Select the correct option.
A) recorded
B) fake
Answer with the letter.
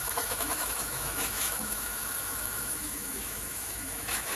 B